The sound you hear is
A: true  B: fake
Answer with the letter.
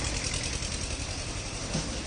A